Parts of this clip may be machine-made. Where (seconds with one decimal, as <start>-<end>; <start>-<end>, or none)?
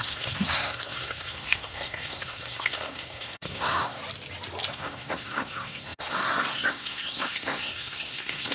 0.0-4.0; 4.7-8.5